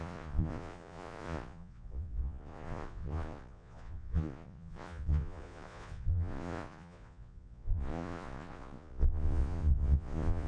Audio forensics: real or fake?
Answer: fake